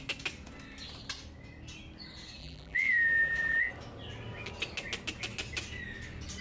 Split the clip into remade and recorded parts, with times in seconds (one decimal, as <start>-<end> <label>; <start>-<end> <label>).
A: 0.0-2.4 recorded; 2.4-3.7 remade; 3.7-6.4 recorded